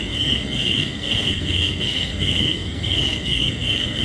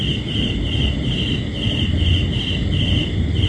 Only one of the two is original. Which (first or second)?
second